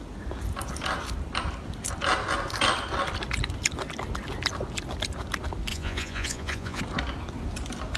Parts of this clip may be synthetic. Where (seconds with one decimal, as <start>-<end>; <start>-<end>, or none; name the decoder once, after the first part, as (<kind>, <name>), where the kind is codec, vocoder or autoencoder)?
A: 5.7-6.8 (vocoder, Vocos)